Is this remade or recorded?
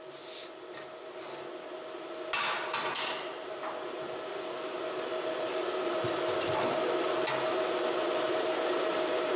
recorded